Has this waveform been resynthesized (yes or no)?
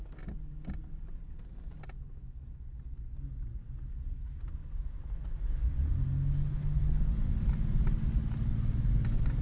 no